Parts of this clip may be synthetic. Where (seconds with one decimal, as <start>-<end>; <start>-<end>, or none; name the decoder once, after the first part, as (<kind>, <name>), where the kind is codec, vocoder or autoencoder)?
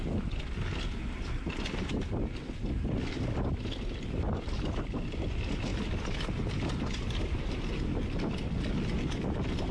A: none